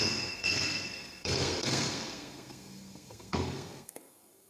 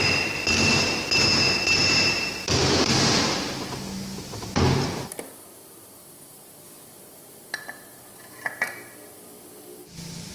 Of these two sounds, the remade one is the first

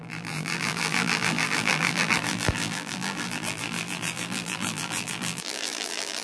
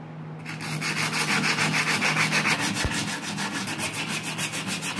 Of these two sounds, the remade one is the first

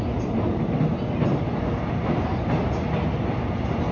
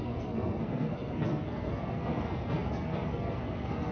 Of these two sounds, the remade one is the second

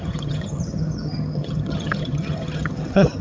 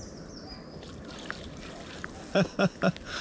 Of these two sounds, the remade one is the first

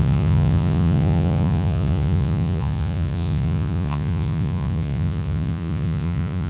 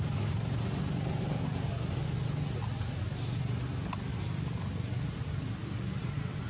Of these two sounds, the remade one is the first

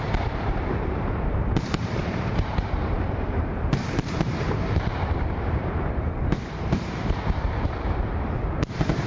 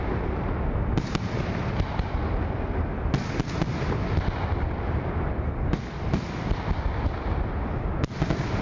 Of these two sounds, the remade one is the first